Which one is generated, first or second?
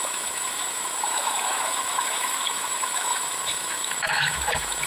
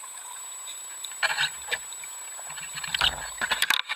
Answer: first